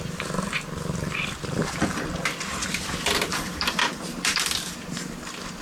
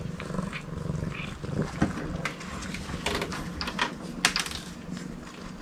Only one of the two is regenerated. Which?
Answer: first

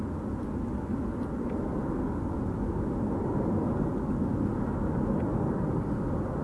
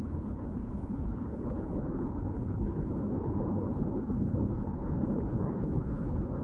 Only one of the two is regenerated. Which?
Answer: second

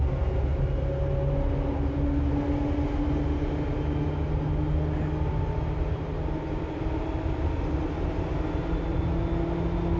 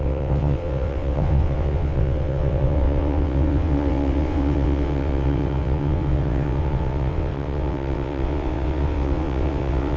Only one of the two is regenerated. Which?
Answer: second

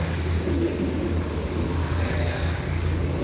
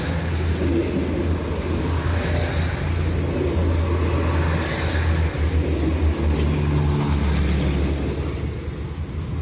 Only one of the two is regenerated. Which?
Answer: first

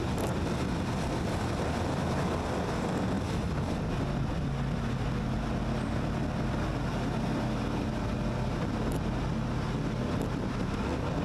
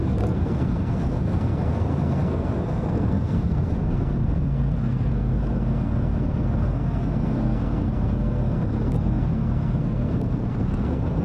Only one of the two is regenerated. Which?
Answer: second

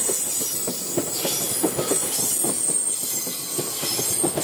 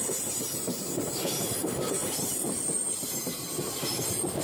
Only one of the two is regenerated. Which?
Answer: second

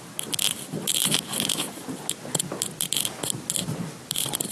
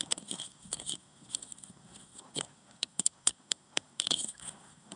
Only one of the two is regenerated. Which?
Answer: second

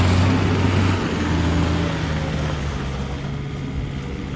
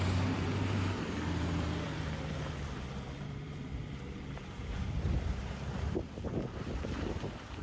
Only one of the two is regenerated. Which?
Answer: second